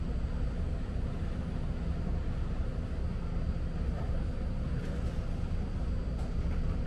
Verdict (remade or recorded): recorded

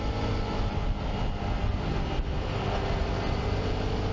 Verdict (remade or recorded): recorded